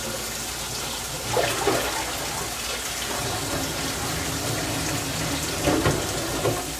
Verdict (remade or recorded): recorded